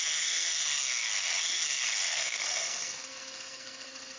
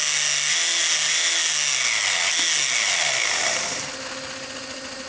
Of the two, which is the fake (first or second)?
first